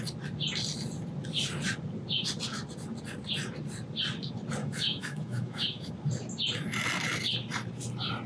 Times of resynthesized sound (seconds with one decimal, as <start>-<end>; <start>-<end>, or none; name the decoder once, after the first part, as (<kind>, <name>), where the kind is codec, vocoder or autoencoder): 4.6-5.9 (autoencoder, DAC-VAE)